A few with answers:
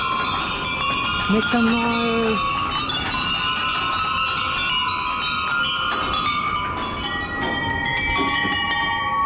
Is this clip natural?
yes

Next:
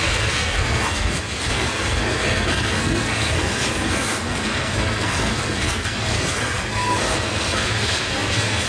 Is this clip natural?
no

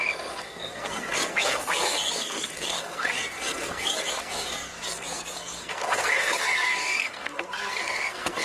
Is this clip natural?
no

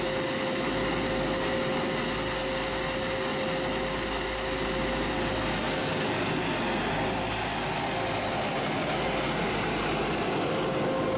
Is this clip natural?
yes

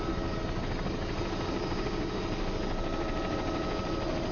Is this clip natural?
yes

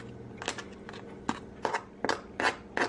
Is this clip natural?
yes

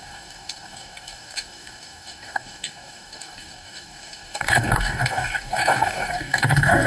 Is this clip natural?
no